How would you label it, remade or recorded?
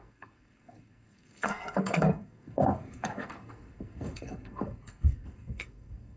remade